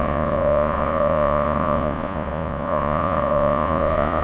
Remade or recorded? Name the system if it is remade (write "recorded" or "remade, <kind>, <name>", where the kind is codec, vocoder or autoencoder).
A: remade, vocoder, Vocos